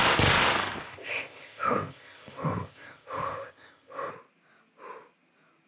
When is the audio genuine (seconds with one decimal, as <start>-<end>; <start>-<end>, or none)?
0.0-0.8; 4.1-5.7